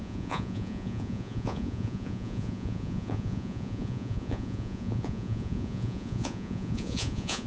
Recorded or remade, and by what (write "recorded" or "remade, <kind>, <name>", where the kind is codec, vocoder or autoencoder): remade, vocoder, Vocos